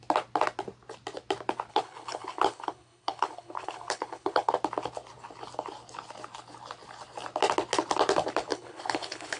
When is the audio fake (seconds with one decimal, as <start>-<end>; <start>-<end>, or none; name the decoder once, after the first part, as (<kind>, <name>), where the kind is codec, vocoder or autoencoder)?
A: 1.7-4.5 (codec, HILCodec); 8.5-9.4